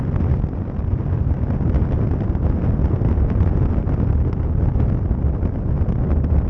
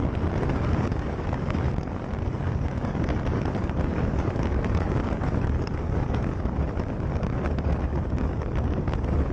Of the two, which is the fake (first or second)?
second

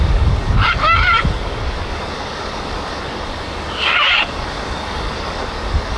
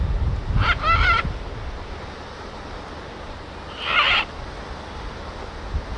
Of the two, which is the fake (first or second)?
first